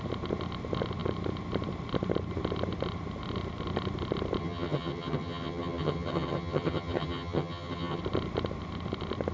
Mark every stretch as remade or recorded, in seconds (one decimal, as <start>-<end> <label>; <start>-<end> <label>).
0.0-4.4 recorded; 4.4-8.0 remade; 8.0-9.3 recorded